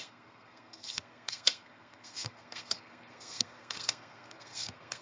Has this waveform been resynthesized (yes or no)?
yes